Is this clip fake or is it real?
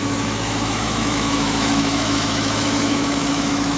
fake